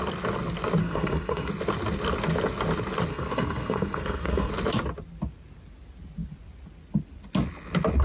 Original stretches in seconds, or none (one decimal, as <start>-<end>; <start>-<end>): 0.0-0.8; 1.5-3.1; 4.5-8.0